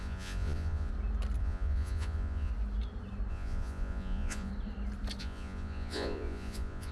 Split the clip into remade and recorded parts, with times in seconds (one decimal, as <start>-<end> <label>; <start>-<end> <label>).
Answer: 0.0-0.9 remade; 0.9-1.4 recorded; 1.4-2.5 remade; 2.5-3.3 recorded; 3.3-4.5 remade; 4.5-5.2 recorded; 5.2-6.9 remade